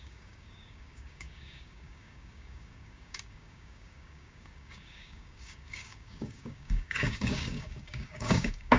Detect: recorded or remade remade